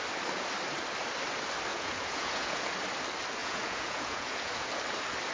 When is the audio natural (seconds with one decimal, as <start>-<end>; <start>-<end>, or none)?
0.0-1.7; 2.7-3.4; 4.7-5.3